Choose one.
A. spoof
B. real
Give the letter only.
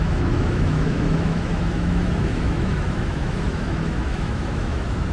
A